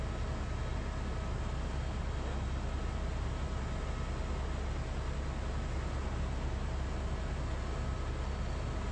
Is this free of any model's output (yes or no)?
yes